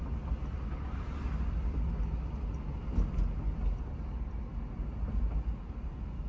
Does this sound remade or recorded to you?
recorded